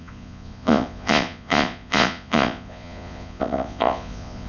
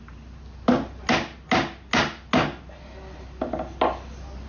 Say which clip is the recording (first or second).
second